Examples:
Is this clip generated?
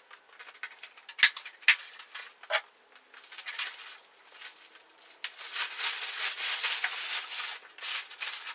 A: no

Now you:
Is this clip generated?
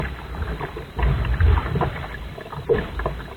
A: no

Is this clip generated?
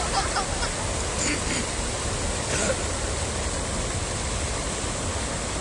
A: no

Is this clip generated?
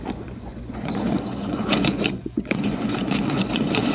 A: yes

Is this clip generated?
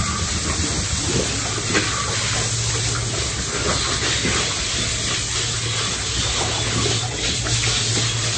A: no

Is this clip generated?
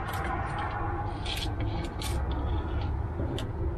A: no